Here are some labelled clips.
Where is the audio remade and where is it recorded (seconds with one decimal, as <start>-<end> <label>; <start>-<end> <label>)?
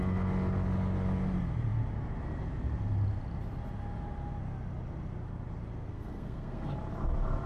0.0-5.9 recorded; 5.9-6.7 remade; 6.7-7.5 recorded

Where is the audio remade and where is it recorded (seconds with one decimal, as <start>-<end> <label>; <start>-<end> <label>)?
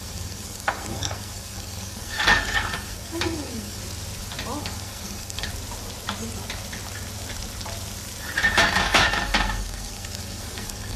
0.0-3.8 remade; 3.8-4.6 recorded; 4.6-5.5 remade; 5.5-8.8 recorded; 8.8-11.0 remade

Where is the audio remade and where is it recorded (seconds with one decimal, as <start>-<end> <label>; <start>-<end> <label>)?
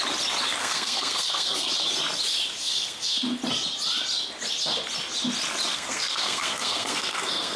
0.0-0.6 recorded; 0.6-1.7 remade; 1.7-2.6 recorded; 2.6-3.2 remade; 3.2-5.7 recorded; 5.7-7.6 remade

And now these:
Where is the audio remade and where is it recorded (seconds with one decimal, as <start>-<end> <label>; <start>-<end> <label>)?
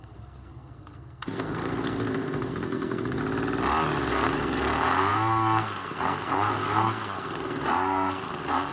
0.0-3.2 remade; 3.2-4.1 recorded; 4.1-8.7 remade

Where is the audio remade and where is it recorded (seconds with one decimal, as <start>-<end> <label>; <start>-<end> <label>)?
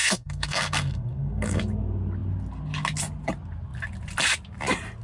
0.0-1.6 remade; 1.6-5.0 recorded